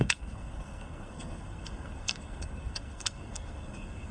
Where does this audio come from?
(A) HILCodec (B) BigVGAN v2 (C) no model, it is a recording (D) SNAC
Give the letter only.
D